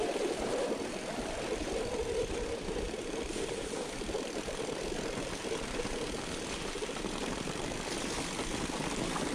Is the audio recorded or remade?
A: remade